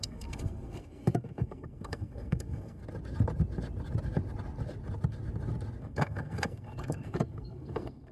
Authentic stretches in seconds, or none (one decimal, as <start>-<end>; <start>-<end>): 2.8-5.8